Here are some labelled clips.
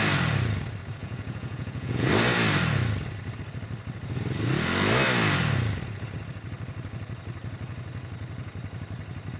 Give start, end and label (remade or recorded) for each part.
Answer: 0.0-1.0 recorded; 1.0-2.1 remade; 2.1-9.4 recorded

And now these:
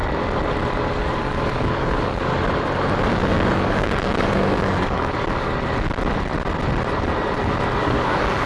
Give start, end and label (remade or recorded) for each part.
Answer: 0.0-0.9 recorded; 0.9-2.3 remade; 2.3-3.1 recorded; 3.1-5.5 remade; 5.5-7.8 recorded; 7.8-8.5 remade

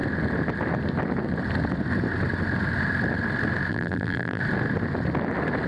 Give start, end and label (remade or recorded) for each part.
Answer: 0.0-3.7 recorded; 3.7-4.4 remade; 4.4-5.7 recorded

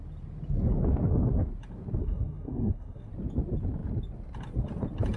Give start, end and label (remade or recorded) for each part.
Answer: 0.0-2.0 recorded; 2.0-3.1 remade; 3.1-5.2 recorded

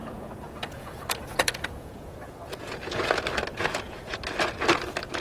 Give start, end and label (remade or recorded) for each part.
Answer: 0.0-3.1 remade; 3.1-3.5 recorded; 3.5-4.2 remade; 4.2-5.2 recorded

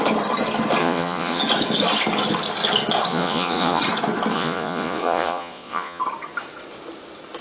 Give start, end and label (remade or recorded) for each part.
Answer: 0.0-0.8 recorded; 0.8-1.4 remade; 1.4-3.1 recorded; 3.1-3.8 remade; 3.8-4.3 recorded; 4.3-6.0 remade; 6.0-7.4 recorded

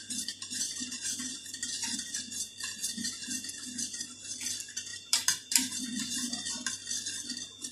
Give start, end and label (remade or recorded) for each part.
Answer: 0.0-4.3 remade; 4.3-4.9 recorded; 4.9-6.7 remade; 6.7-7.7 recorded